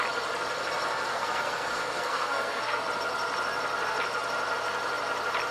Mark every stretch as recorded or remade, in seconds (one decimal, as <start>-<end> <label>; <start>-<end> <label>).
0.0-1.1 recorded; 1.1-2.8 remade; 2.8-5.5 recorded